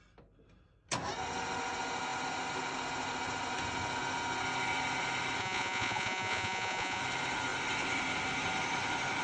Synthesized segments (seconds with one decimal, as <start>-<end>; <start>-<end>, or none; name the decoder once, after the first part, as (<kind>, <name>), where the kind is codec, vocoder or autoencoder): 5.4-7.0 (vocoder, Vocos)